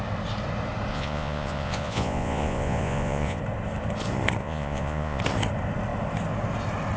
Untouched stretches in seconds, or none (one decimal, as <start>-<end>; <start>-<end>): 0.0-0.9; 3.4-4.4; 5.2-7.0